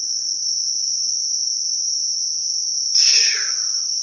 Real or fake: real